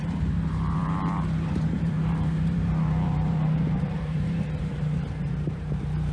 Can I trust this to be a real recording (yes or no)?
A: no